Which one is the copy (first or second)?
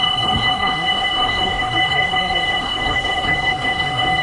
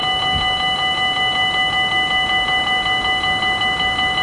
first